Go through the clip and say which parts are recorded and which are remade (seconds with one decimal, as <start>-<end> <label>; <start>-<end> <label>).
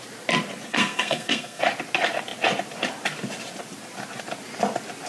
0.0-0.7 recorded; 0.7-1.6 remade; 1.6-5.1 recorded